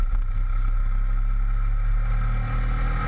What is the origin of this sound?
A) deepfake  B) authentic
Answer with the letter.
B